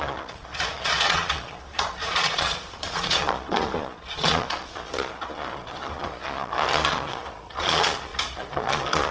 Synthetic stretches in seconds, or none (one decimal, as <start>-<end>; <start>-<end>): 0.0-9.1